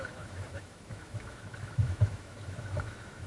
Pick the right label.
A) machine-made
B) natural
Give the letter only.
A